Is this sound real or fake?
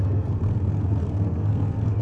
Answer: fake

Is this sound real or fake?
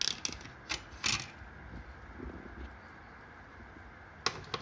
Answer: real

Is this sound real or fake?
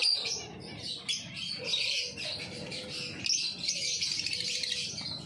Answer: real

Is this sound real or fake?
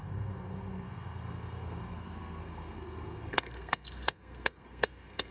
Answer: fake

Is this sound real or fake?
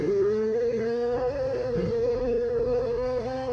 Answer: fake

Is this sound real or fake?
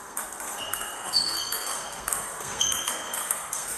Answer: fake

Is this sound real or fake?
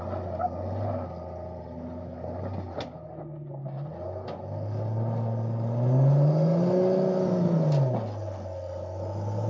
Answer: real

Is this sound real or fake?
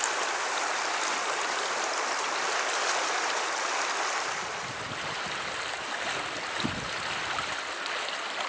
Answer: real